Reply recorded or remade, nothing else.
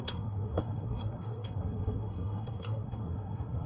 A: remade